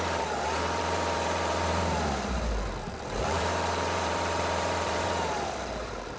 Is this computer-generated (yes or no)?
yes